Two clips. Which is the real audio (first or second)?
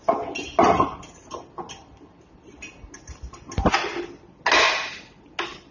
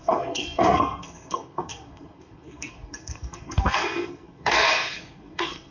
first